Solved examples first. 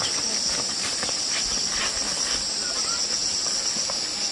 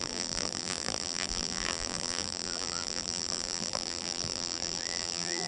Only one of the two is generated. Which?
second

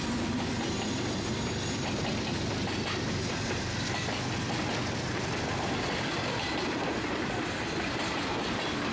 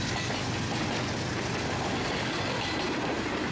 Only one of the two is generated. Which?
first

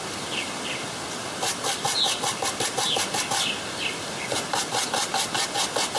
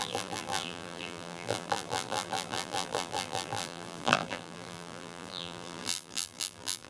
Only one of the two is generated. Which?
second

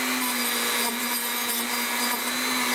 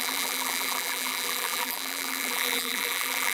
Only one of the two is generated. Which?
second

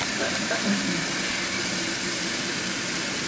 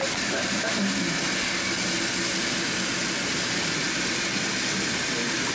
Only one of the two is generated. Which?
first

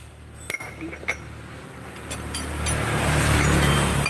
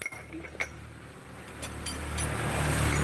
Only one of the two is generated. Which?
second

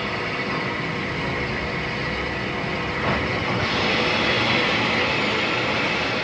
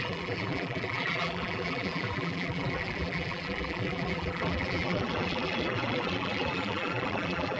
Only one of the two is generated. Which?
second